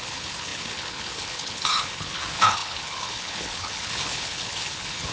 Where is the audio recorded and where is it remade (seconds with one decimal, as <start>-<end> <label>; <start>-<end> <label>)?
0.0-5.1 remade